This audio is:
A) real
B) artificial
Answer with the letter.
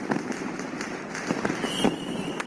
A